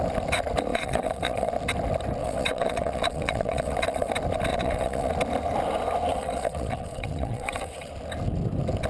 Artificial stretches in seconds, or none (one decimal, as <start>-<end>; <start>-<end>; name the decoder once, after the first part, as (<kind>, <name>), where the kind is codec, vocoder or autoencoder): 0.7-1.5 (vocoder, WaveNeXt); 2.2-4.1; 4.5-5.1; 6.1-7.9